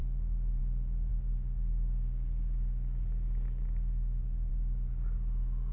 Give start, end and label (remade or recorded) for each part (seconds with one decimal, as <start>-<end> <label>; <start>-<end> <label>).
0.0-5.7 recorded